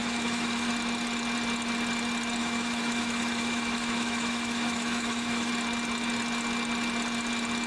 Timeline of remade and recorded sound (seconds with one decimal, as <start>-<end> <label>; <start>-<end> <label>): 0.0-0.7 remade; 0.7-2.4 recorded; 2.4-5.5 remade; 5.5-7.7 recorded